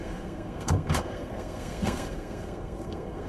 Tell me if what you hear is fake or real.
fake